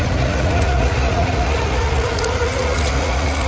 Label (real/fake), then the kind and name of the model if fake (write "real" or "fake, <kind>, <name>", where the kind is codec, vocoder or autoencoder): fake, vocoder, Vocos